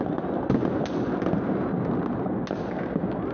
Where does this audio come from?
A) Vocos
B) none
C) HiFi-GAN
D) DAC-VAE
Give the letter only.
B